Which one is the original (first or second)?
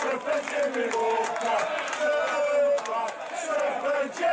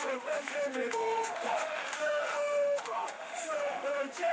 first